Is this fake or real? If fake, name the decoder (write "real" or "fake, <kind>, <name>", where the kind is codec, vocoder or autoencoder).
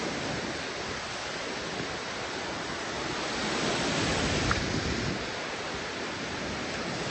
real